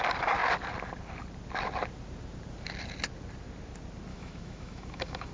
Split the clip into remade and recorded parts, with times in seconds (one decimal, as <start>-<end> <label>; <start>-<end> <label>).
0.0-4.1 recorded; 4.1-5.3 remade